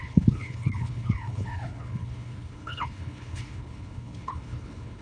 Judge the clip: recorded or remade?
remade